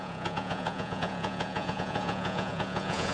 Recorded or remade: remade